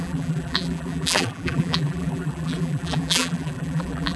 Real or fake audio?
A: fake